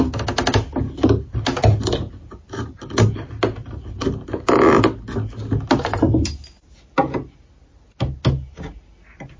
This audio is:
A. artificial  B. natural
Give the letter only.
B